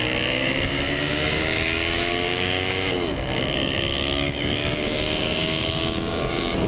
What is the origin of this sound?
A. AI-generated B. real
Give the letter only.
A